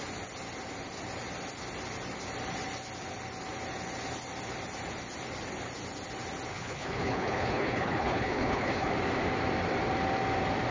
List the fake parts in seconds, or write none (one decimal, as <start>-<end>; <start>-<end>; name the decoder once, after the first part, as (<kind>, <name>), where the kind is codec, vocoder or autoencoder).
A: 6.5-8.9 (codec, HILCodec)